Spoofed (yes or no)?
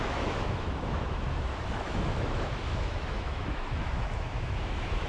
yes